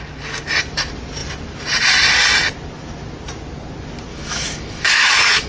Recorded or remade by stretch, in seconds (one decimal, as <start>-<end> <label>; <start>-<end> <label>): 0.0-4.1 recorded; 4.1-5.5 remade